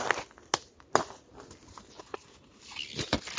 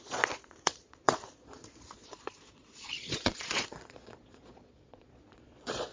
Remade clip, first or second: second